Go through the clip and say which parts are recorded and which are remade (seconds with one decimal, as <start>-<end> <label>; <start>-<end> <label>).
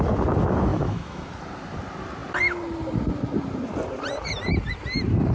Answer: 0.0-0.7 recorded; 0.7-1.3 remade; 1.3-5.3 recorded